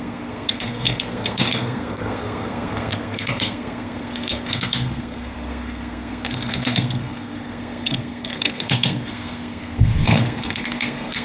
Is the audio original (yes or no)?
no